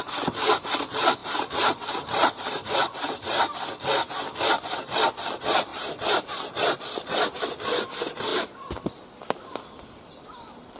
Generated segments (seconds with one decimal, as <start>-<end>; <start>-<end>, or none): 1.2-2.8; 5.7-6.8